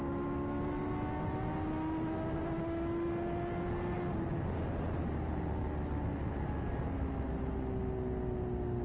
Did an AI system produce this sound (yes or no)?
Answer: no